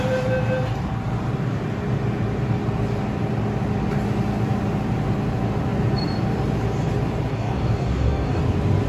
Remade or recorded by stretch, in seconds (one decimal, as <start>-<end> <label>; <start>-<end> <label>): 0.0-7.3 recorded; 7.3-8.4 remade; 8.4-8.9 recorded